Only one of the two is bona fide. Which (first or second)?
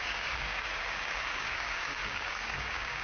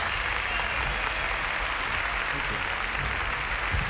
second